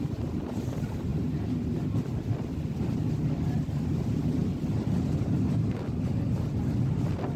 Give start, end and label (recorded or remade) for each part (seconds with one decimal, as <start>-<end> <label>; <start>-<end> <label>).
0.0-7.4 recorded